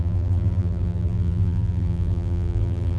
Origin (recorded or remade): remade